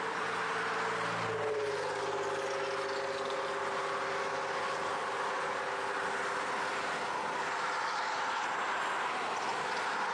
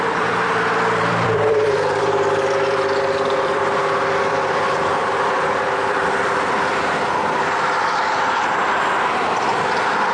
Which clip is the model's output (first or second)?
second